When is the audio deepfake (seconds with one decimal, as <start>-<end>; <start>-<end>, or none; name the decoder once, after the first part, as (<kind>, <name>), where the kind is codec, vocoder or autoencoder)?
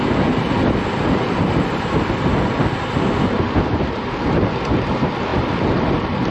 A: 5.3-6.3 (vocoder, BigVGAN v2)